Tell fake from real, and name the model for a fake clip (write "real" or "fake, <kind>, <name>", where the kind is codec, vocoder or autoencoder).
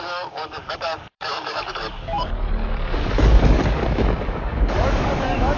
fake, codec, DAC